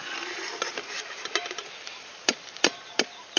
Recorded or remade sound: remade